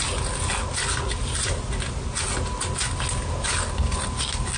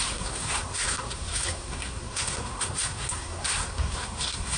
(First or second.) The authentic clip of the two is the first